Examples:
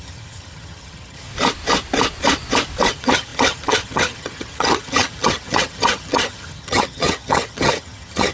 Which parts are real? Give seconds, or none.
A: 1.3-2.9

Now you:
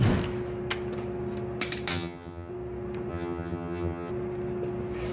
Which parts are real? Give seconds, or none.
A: 0.0-1.9; 2.5-3.1; 4.1-5.1